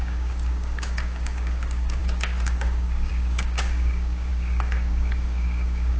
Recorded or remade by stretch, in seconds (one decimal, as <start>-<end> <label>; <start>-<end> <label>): 0.0-6.0 remade